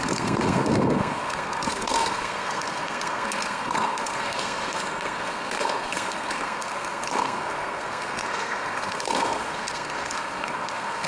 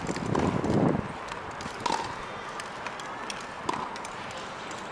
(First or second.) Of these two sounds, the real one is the second